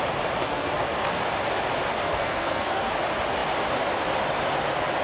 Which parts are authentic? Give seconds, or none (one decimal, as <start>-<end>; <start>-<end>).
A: 0.0-0.4; 1.1-2.0; 2.9-5.0